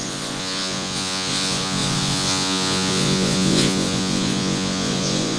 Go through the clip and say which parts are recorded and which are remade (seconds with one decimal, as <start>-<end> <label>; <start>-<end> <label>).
0.0-5.4 remade